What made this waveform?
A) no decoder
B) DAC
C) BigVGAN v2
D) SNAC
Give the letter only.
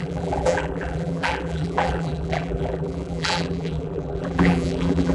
C